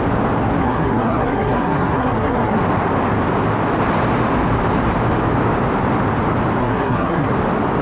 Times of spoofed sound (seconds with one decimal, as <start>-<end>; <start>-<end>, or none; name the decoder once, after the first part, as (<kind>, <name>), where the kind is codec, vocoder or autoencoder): 0.6-2.6 (codec, SNAC); 6.6-7.3

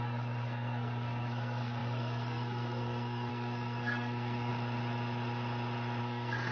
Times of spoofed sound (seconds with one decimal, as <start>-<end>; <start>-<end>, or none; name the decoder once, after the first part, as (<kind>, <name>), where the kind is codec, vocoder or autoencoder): 0.0-4.5 (codec, SNAC); 6.0-6.5

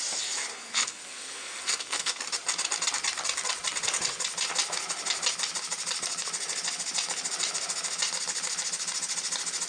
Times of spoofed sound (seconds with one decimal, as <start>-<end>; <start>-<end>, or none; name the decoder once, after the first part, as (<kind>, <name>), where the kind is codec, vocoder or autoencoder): 0.5-2.2 (codec, SNAC)

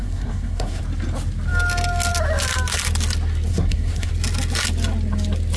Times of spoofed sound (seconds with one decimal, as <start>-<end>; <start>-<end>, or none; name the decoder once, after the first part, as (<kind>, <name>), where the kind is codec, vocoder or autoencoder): 0.0-0.8 (codec, SNAC); 3.5-4.1